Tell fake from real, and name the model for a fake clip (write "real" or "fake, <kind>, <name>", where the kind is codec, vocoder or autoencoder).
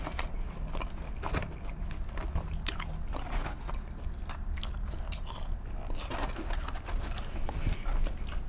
real